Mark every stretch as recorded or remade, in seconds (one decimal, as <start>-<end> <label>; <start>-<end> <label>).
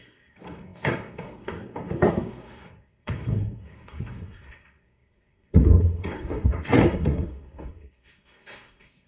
0.0-9.1 remade